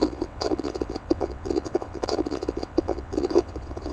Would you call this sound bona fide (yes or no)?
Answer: no